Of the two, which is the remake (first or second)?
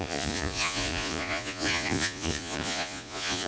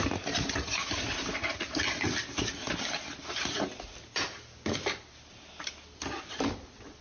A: first